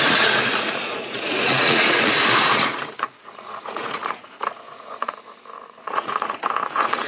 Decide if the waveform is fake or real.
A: fake